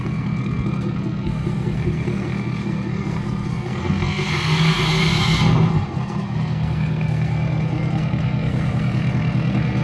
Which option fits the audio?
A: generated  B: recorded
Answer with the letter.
A